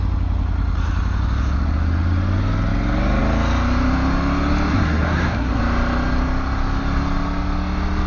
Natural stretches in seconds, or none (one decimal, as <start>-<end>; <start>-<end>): 0.0-4.7; 5.6-8.1